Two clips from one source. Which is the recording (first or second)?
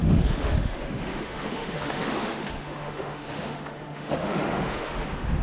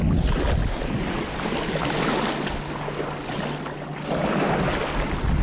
second